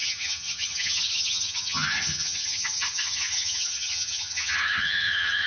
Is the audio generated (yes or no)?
yes